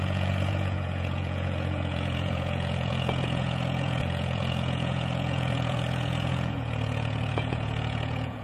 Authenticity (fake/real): fake